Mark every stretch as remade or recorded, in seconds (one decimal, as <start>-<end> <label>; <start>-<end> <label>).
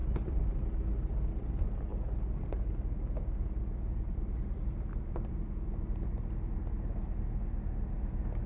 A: 0.0-0.5 remade; 0.5-8.5 recorded